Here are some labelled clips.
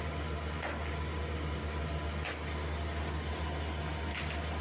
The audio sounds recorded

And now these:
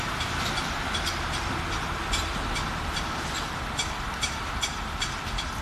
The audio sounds recorded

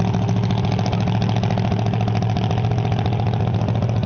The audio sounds recorded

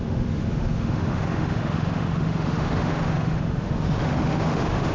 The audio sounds remade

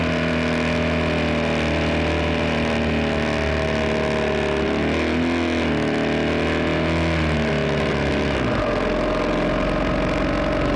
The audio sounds recorded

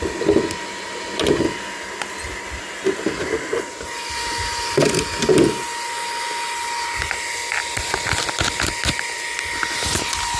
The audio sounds recorded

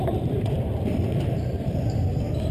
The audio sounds remade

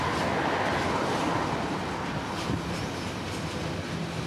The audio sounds recorded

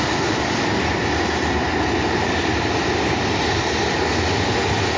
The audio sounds recorded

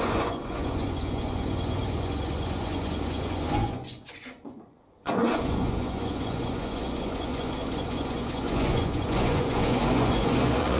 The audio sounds remade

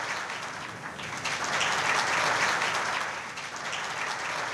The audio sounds recorded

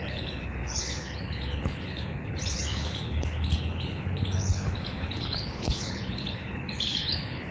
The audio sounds remade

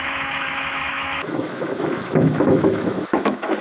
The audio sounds remade